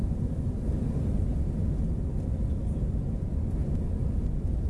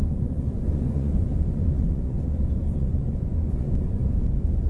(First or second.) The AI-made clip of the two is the second